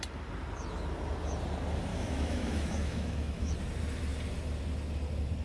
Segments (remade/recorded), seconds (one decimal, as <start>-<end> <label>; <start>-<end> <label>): 0.0-1.9 recorded; 1.9-3.5 remade; 3.5-5.4 recorded